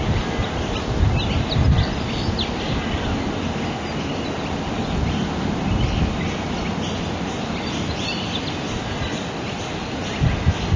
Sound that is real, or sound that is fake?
real